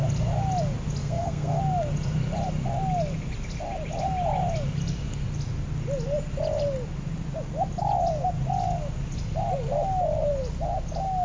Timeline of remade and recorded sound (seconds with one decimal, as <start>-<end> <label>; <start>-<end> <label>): 0.0-1.0 recorded; 1.0-1.6 remade; 1.6-11.2 recorded